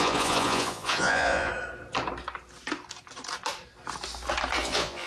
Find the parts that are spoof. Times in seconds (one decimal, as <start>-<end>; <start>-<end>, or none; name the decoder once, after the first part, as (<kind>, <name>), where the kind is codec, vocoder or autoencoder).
0.0-1.5 (vocoder, Vocos); 4.6-5.1